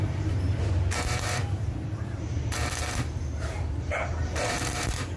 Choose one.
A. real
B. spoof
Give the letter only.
B